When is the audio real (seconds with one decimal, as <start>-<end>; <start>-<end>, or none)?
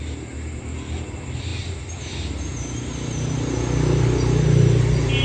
0.0-5.2